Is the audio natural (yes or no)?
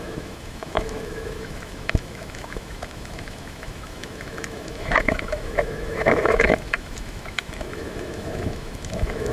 no